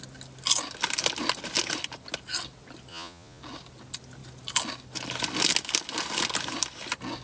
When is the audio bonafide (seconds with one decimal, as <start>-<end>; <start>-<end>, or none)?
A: 0.0-2.9; 3.4-7.2